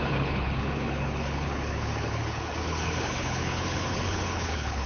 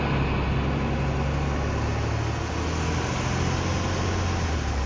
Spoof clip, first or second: first